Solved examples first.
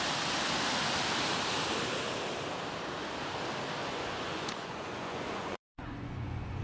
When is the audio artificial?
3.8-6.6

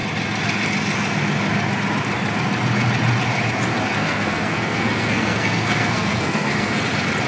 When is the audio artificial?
3.9-6.8

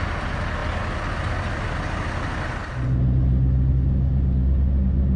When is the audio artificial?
none

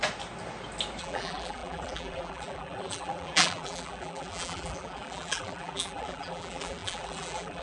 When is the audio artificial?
1.0-7.6

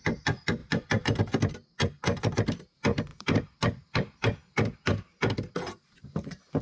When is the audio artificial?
0.6-1.2; 3.1-6.6

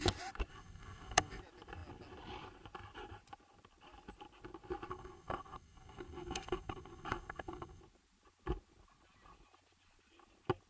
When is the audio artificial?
0.5-1.4; 4.9-7.8

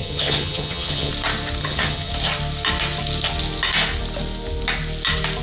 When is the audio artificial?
0.0-1.1; 1.6-2.1

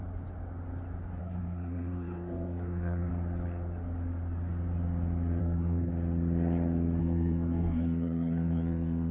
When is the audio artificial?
1.2-3.1; 5.4-5.9; 7.0-9.1